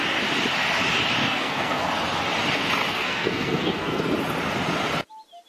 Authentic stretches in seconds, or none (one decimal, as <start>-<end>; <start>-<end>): 0.0-1.2; 1.9-2.9; 4.0-5.5